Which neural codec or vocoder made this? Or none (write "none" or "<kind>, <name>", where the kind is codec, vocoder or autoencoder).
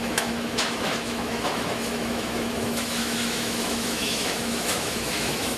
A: autoencoder, DAC-VAE